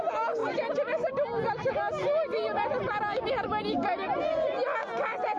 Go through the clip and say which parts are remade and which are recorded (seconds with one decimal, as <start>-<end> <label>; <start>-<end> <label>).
0.0-5.4 recorded